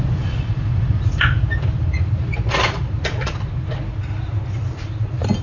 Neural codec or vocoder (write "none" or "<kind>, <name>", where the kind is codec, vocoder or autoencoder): none